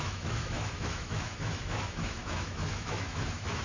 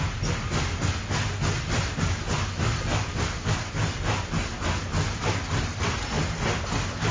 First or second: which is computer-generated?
first